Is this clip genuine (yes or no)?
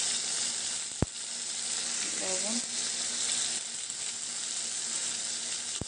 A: yes